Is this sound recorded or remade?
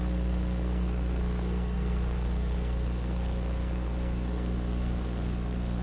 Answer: remade